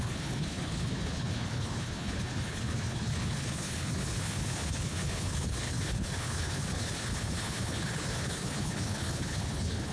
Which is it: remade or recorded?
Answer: remade